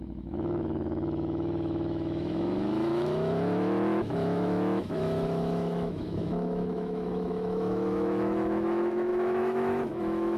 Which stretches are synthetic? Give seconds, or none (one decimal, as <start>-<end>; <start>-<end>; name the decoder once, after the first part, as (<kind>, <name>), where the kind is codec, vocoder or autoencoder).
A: 0.0-10.4 (autoencoder, DAC-VAE)